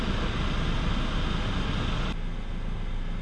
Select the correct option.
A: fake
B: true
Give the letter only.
B